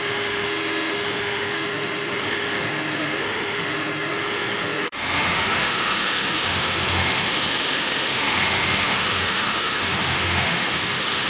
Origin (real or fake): fake